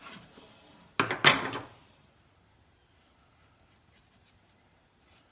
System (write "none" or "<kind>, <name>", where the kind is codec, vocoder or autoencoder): none